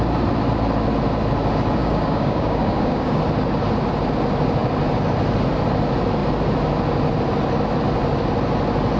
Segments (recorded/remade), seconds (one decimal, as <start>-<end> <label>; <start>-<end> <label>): 0.0-1.8 recorded; 1.8-3.2 remade; 3.2-9.0 recorded